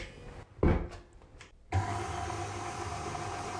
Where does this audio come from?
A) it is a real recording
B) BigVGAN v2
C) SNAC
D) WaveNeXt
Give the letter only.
A